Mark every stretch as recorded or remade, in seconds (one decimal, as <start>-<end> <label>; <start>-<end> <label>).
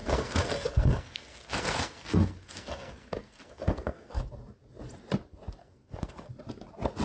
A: 0.0-4.2 remade; 4.2-5.6 recorded; 5.6-6.3 remade; 6.3-7.0 recorded